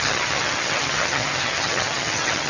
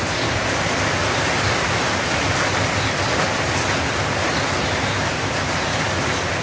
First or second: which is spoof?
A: first